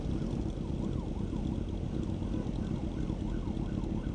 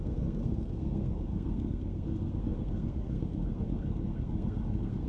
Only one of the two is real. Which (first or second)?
first